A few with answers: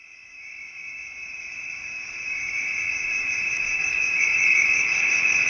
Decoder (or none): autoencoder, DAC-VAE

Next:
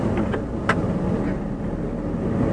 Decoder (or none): none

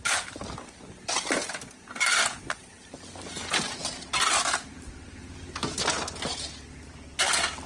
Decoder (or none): none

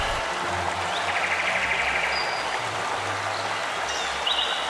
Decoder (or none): none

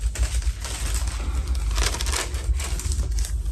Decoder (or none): none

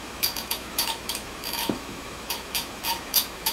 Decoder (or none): autoencoder, DAC-VAE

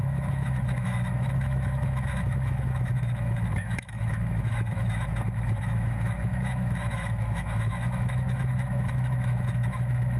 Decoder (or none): autoencoder, DAC-VAE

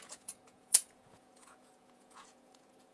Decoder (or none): vocoder, Vocos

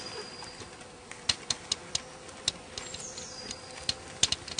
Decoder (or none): none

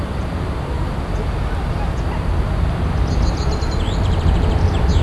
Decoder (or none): none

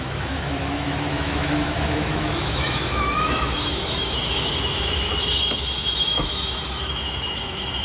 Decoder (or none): autoencoder, DAC-VAE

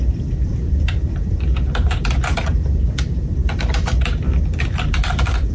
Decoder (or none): vocoder, BigVGAN v2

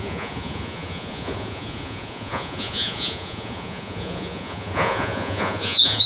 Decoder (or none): vocoder, Vocos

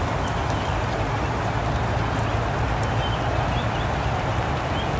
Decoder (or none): none